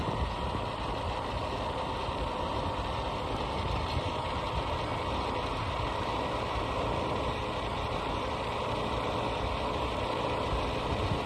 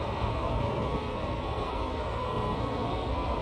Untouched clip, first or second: first